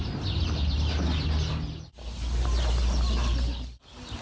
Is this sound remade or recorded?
recorded